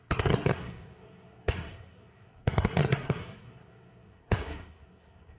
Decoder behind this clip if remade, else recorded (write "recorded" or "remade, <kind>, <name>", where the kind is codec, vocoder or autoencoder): remade, codec, SNAC